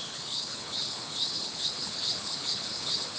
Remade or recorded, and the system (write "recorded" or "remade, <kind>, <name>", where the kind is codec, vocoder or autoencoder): remade, codec, HILCodec